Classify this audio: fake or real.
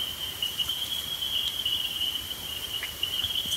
fake